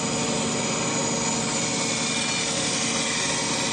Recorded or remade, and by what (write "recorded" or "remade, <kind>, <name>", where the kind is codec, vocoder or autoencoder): recorded